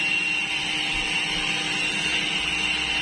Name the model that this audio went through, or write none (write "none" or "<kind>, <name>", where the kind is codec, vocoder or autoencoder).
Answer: none